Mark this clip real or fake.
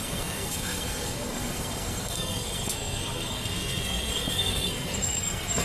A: fake